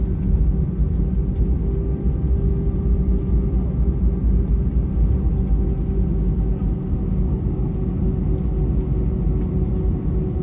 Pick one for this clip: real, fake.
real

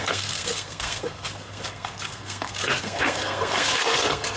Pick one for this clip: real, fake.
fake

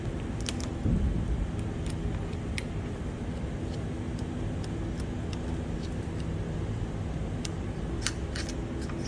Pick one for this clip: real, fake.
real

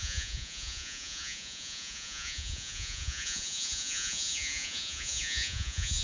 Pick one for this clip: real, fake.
fake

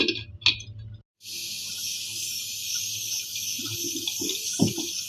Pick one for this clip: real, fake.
real